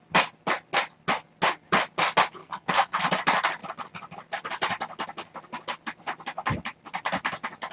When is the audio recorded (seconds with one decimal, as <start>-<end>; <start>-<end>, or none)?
0.0-2.4; 3.0-7.7